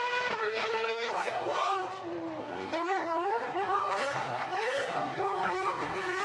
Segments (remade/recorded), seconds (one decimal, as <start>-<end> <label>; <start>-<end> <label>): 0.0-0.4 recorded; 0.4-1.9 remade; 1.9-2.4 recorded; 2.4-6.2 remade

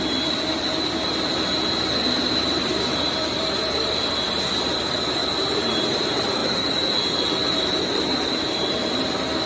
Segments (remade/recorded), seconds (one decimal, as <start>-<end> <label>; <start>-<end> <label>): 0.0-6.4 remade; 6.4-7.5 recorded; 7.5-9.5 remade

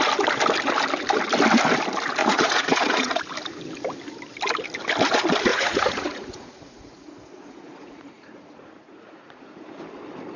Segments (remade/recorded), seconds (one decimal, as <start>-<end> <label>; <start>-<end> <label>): 0.0-2.2 recorded; 2.2-3.2 remade; 3.2-5.5 recorded; 5.5-9.8 remade; 9.8-10.4 recorded

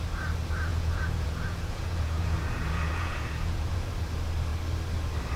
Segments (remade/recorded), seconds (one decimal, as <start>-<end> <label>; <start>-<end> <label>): 0.0-0.7 recorded; 0.7-3.9 remade; 3.9-5.4 recorded